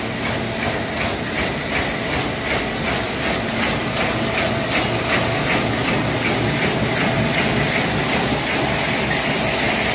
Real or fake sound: real